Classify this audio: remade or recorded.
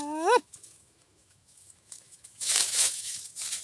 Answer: remade